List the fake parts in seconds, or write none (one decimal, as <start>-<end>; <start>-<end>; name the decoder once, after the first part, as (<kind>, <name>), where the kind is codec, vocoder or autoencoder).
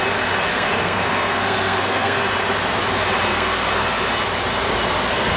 0.5-2.3 (codec, SNAC); 3.3-4.1